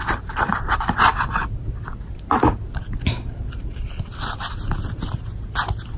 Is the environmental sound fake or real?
real